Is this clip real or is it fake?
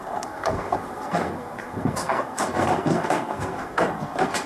fake